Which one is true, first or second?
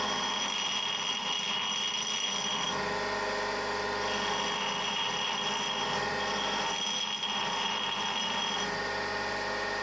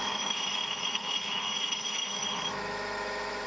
first